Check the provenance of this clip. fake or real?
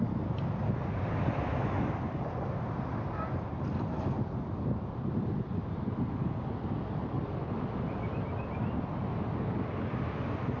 real